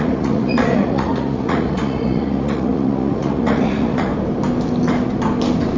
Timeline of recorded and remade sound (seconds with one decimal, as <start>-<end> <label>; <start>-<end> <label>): 0.0-4.1 remade; 4.1-5.8 recorded